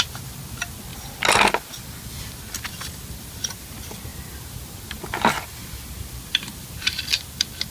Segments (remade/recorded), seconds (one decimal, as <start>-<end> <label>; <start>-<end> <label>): 0.0-0.9 remade; 0.9-2.2 recorded; 2.2-4.1 remade; 4.1-6.1 recorded; 6.1-7.7 remade